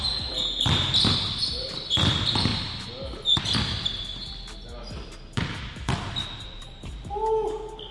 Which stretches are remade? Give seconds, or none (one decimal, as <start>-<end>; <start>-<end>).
none